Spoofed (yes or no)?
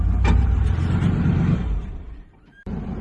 yes